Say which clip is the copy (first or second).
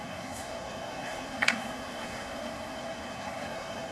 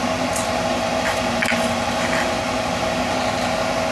first